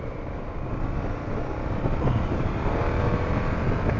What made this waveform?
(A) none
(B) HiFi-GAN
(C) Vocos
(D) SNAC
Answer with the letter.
A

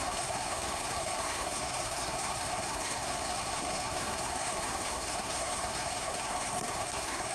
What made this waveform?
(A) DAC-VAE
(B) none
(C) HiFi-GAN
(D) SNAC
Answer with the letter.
D